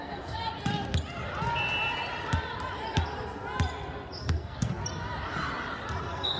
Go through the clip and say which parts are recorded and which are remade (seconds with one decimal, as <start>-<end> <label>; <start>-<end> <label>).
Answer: 0.0-0.4 remade; 0.4-4.2 recorded; 4.2-4.8 remade; 4.8-6.0 recorded; 6.0-6.4 remade